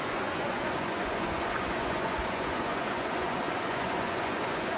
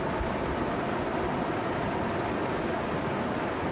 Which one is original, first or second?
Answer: second